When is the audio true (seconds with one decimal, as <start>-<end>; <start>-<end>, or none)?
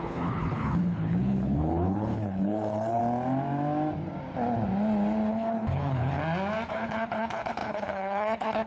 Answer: 3.0-5.3; 6.2-6.7